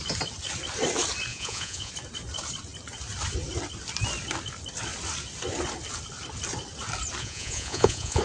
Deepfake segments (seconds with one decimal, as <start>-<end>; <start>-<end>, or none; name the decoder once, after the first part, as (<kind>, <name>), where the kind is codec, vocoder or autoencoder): 1.3-1.9 (vocoder, Vocos); 7.2-8.2